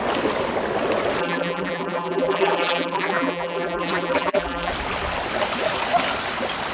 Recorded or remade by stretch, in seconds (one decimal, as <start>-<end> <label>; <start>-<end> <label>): 0.0-1.2 recorded; 1.2-4.7 remade; 4.7-6.7 recorded